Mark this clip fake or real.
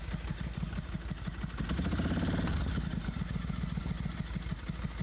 real